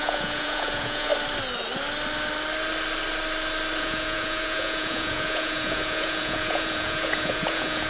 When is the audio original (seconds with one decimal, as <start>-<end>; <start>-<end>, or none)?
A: 1.1-3.8